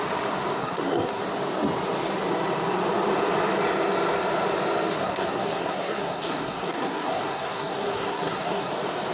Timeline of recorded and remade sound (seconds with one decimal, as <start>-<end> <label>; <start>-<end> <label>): 0.0-0.6 recorded; 0.6-1.2 remade; 1.2-4.9 recorded; 4.9-8.7 remade; 8.7-9.1 recorded

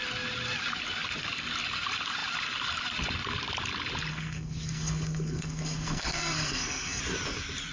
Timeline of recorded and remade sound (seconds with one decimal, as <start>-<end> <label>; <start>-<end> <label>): 0.0-4.1 recorded; 4.1-7.0 remade; 7.0-7.7 recorded

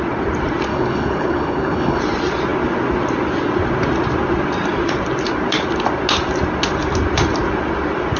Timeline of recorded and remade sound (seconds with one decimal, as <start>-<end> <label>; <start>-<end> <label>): 0.0-0.7 recorded; 0.7-2.0 remade; 2.0-8.2 recorded

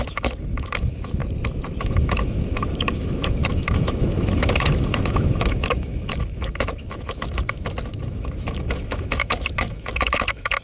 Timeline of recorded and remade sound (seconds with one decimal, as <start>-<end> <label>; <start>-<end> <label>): 0.0-1.2 remade; 1.2-1.8 recorded; 1.8-10.6 remade

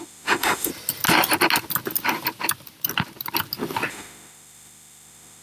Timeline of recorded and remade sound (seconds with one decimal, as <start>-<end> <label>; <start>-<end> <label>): 0.0-0.7 remade; 0.7-3.9 recorded; 3.9-5.4 remade